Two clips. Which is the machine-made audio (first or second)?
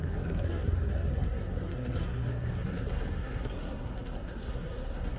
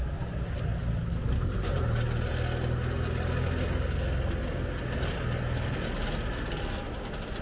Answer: first